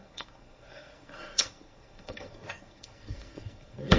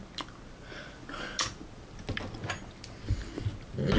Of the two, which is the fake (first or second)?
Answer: first